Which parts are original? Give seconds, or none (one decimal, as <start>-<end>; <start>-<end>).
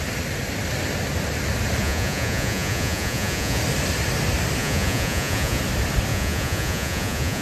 0.0-1.8; 3.6-4.6; 5.6-6.1